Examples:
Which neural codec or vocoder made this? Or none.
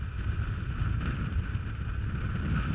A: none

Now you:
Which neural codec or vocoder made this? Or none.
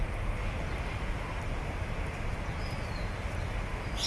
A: none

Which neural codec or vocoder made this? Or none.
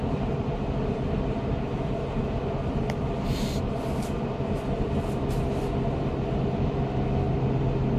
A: none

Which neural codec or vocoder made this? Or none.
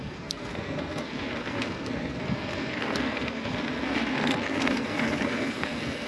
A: codec, SNAC